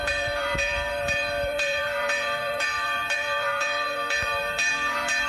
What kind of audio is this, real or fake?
fake